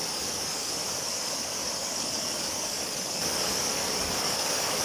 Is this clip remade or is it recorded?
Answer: remade